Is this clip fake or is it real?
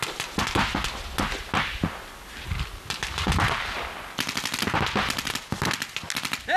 real